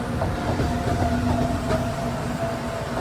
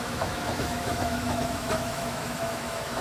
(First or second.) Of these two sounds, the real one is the first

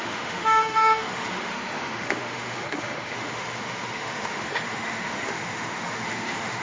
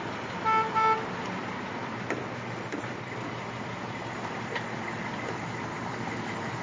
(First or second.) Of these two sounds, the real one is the second